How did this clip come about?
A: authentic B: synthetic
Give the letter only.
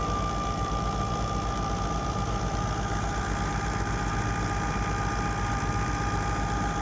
B